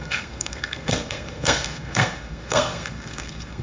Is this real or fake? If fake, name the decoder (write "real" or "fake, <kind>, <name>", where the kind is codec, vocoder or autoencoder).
fake, codec, SNAC